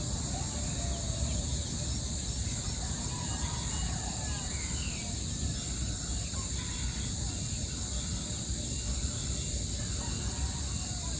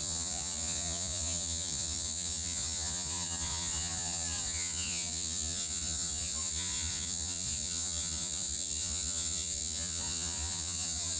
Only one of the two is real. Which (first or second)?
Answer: first